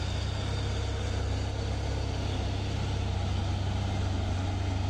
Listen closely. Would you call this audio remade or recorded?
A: recorded